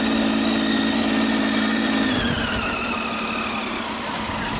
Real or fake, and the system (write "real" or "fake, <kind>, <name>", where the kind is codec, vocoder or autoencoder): real